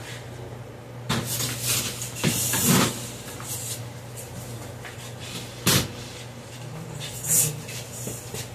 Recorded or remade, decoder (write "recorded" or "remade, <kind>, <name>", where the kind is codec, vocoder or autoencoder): recorded